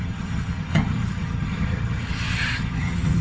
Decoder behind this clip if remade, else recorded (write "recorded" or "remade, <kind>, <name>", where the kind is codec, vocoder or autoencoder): remade, vocoder, HiFi-GAN